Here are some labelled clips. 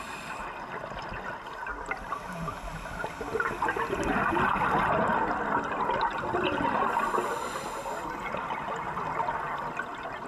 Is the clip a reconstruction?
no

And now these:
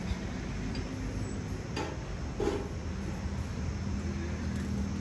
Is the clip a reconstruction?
no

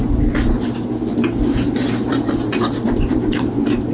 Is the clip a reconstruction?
no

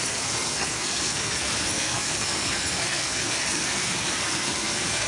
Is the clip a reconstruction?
yes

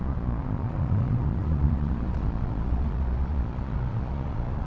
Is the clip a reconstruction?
yes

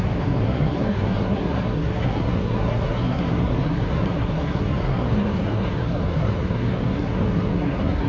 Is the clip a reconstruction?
yes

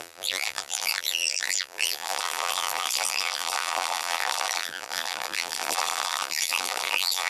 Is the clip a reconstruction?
yes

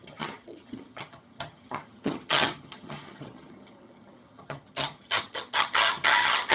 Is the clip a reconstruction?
yes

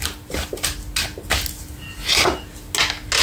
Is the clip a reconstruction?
no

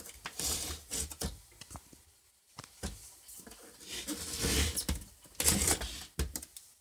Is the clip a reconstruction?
no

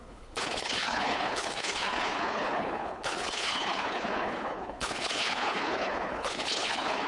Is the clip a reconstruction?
yes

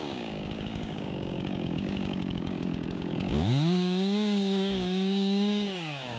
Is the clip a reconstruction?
yes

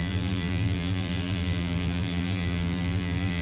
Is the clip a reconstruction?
yes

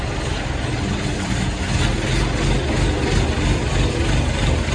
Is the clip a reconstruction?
no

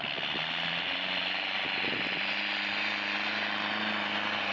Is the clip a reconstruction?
no